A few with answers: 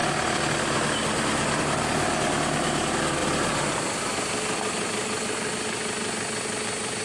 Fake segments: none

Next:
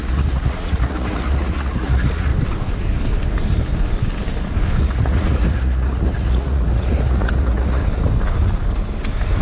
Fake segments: 0.0-2.3 (vocoder, Vocos); 4.8-7.8

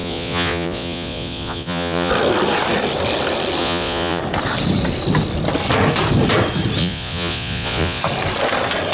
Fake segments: 0.0-2.1 (vocoder, Vocos); 3.6-4.2; 6.8-8.0

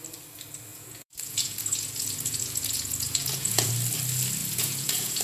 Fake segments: 0.7-3.7 (vocoder, Vocos); 4.4-5.2